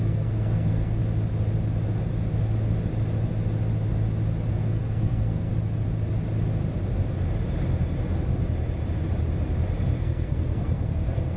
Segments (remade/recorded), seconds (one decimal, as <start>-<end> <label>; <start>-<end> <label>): 0.0-1.0 remade; 1.0-4.5 recorded; 4.5-5.5 remade; 5.5-10.0 recorded; 10.0-11.4 remade